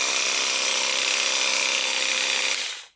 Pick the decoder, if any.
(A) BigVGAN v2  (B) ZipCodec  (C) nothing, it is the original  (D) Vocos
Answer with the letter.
C